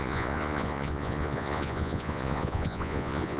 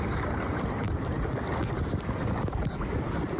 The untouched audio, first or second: second